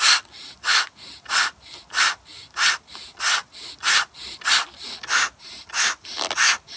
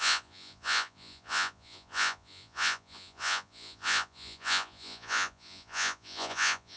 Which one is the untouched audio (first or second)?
first